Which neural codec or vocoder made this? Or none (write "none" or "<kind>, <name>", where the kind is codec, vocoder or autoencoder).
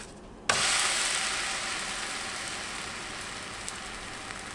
none